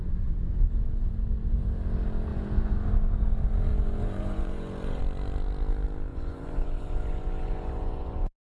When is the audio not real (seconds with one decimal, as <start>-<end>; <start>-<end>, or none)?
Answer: 2.3-2.9; 3.7-5.0; 6.1-8.6